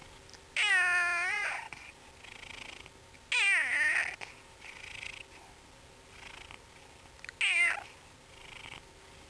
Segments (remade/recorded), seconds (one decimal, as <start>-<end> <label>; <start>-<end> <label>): 0.0-1.3 recorded; 1.3-1.9 remade; 1.9-9.3 recorded